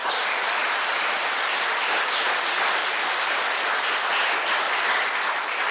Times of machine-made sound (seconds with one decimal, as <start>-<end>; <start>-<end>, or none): 0.0-1.9; 2.8-3.9